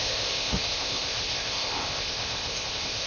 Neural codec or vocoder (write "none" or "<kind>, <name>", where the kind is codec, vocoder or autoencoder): codec, ZipCodec